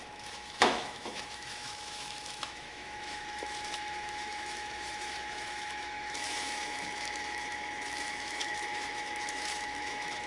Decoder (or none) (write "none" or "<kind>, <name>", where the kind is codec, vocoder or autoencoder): autoencoder, DAC-VAE